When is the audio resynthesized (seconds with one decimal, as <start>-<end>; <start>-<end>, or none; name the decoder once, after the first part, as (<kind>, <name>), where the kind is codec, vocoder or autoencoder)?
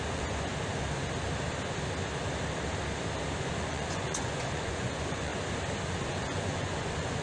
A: 0.0-0.5 (vocoder, Vocos); 3.6-5.3; 5.9-7.2